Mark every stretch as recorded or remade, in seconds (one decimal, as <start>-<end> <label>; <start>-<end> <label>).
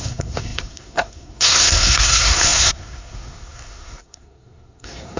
0.0-5.2 remade